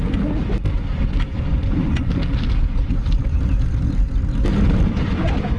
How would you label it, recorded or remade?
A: recorded